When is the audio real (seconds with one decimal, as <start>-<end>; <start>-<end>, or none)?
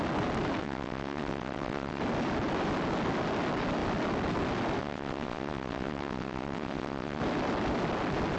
0.0-0.6; 2.0-4.8; 7.2-8.4